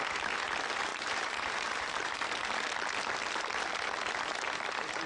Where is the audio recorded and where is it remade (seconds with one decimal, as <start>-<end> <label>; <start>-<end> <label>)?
0.0-0.9 recorded; 0.9-2.3 remade; 2.3-5.1 recorded